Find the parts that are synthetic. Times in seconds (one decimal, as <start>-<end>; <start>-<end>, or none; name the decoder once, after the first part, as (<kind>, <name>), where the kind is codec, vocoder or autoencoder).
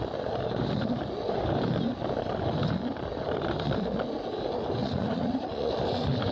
4.8-5.7 (vocoder, Vocos)